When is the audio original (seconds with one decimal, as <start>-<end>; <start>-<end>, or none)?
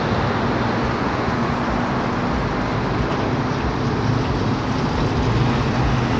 0.0-0.8; 1.6-6.2